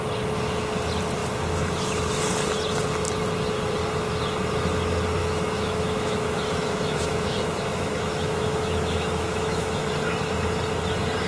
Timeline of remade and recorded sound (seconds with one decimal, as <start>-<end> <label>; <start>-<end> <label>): 0.0-5.2 recorded; 5.2-9.9 remade; 9.9-11.3 recorded